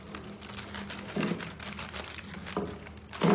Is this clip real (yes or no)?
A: no